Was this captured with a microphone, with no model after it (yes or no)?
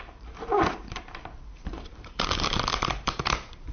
no